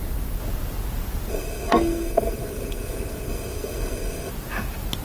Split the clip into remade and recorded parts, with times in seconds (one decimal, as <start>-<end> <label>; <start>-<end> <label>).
0.0-1.3 recorded; 1.3-4.3 remade; 4.3-5.0 recorded